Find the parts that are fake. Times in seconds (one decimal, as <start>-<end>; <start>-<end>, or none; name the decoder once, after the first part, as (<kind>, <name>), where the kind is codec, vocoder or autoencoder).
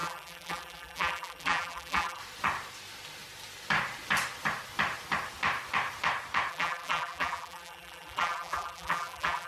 0.0-2.2 (vocoder, BigVGAN v2); 6.5-9.5